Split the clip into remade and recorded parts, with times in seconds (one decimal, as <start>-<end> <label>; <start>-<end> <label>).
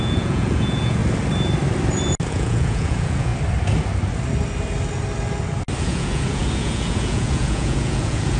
0.0-1.0 remade; 1.0-2.3 recorded; 2.3-3.3 remade; 3.3-5.8 recorded; 5.8-8.4 remade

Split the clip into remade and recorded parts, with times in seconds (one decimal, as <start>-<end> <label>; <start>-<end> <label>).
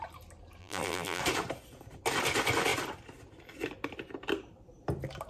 0.0-0.6 recorded; 0.6-1.2 remade; 1.2-5.3 recorded